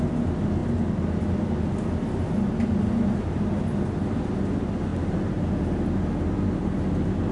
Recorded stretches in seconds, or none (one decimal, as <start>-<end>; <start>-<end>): 0.0-4.9; 5.5-7.3